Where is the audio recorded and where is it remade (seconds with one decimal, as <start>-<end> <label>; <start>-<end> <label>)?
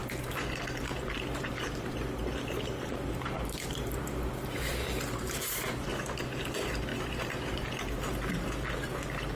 0.0-5.9 remade; 5.9-6.5 recorded; 6.5-9.4 remade